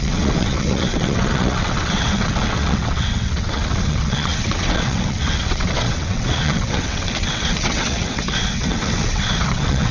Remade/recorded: remade